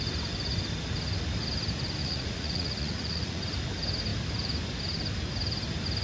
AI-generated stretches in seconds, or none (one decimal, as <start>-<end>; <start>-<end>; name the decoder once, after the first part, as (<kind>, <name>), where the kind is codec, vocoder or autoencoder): 2.0-3.4 (vocoder, Vocos)